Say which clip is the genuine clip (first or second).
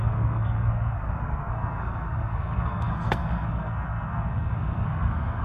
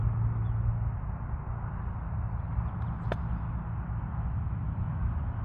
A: second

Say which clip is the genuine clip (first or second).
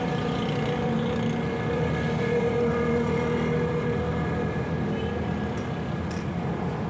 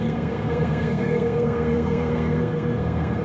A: first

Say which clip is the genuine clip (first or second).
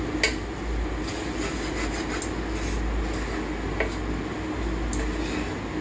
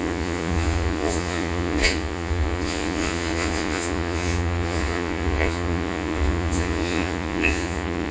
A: first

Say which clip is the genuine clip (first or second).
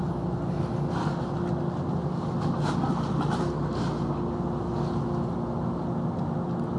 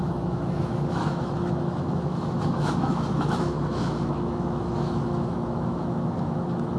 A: first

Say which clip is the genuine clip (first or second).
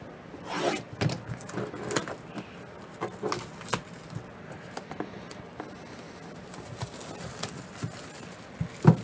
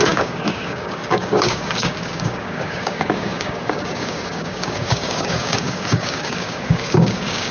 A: first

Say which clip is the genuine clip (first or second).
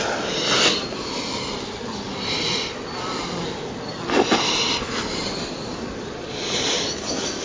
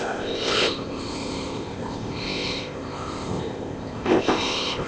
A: first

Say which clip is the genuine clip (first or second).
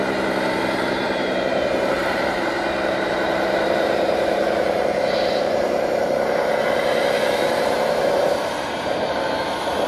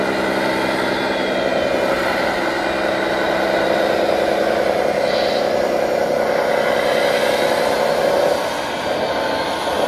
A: second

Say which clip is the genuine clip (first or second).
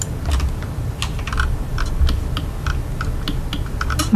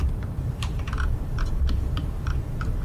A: first